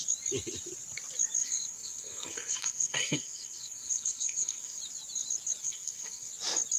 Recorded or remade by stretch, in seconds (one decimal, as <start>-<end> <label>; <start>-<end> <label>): 0.0-1.4 recorded; 1.4-4.8 remade; 4.8-5.6 recorded; 5.6-6.3 remade; 6.3-6.8 recorded